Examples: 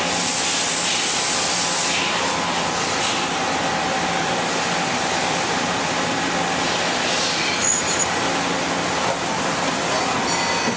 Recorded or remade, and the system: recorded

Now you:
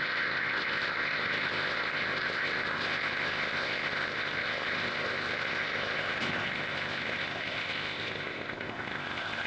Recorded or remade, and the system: remade, codec, ZipCodec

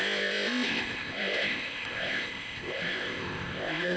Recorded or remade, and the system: remade, codec, ZipCodec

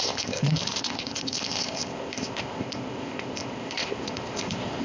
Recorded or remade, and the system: remade, codec, ZipCodec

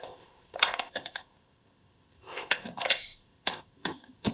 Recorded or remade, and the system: remade, codec, ZipCodec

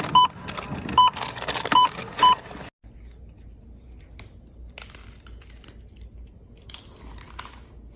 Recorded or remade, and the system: recorded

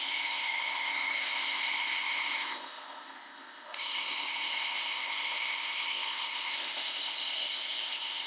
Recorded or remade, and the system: remade, codec, ZipCodec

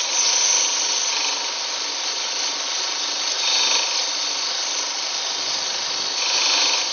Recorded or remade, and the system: recorded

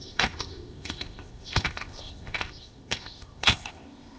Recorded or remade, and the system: remade, codec, ZipCodec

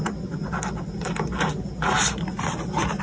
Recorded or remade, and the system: recorded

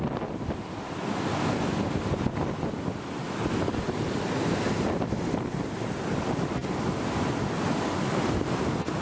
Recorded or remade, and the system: recorded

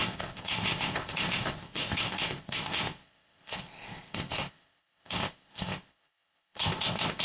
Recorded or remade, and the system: remade, codec, ZipCodec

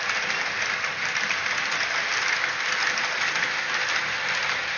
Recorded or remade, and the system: recorded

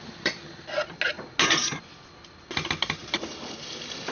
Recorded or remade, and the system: recorded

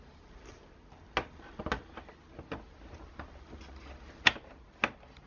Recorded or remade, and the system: recorded